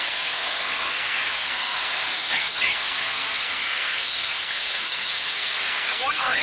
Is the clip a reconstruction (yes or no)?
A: yes